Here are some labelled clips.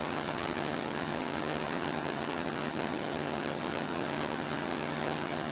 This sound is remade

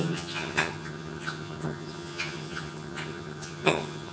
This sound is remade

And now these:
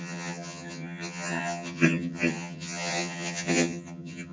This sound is remade